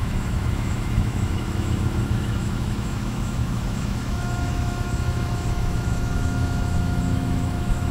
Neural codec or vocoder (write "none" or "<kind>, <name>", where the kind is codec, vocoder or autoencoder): autoencoder, DAC-VAE